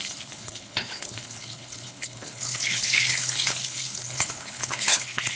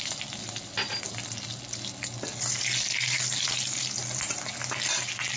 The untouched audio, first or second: second